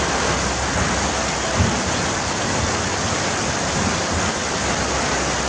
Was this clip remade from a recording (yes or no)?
no